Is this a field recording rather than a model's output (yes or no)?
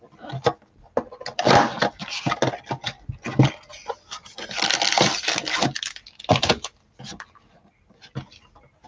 yes